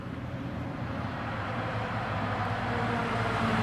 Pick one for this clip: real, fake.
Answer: fake